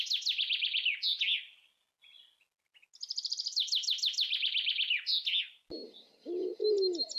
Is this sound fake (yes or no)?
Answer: no